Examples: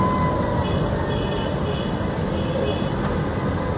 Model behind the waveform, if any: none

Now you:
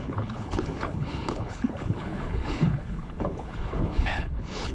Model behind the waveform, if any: codec, HILCodec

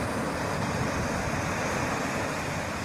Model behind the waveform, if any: none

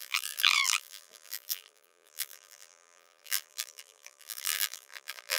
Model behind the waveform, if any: vocoder, BigVGAN v2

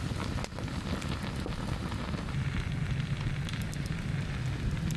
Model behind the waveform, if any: none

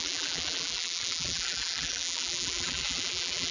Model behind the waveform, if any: vocoder, BigVGAN v2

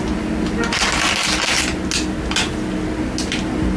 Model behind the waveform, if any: none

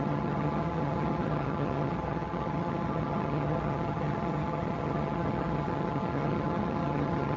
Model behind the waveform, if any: vocoder, HiFi-GAN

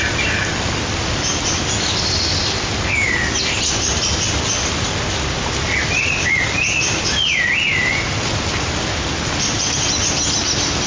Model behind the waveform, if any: none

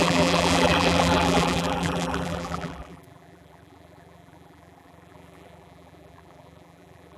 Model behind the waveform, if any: vocoder, BigVGAN v2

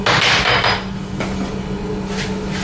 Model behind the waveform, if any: none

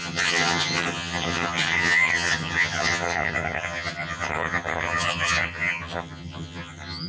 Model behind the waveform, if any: vocoder, HiFi-GAN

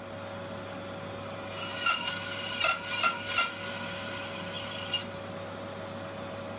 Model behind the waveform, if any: none